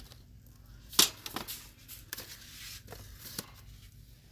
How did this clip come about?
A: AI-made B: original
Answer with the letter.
B